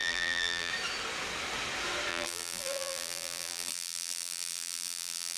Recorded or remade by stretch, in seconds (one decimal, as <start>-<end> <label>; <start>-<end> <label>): 0.0-0.7 remade; 0.7-2.1 recorded; 2.1-5.4 remade